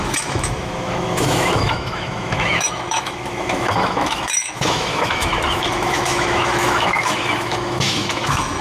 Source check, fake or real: fake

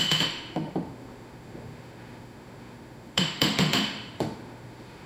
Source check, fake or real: fake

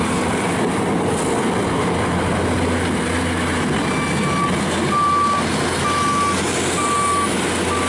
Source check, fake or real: real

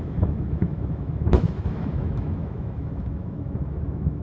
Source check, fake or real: fake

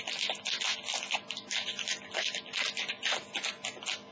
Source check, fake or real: real